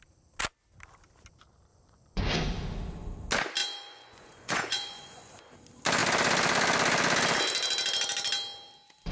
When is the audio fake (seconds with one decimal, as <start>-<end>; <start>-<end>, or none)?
1.7-2.2; 3.6-5.3